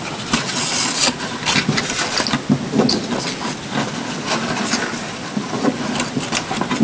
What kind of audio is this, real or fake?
real